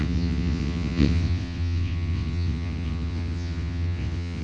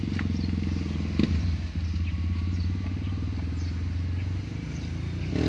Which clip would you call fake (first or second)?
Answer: first